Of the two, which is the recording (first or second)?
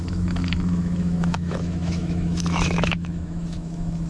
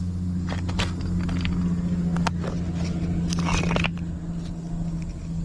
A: second